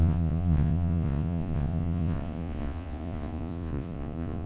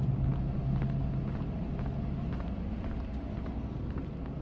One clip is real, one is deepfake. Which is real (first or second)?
second